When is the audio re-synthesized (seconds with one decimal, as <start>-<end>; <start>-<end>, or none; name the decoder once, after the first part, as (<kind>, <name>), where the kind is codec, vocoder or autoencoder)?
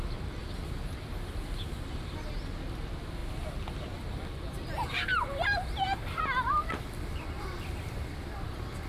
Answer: none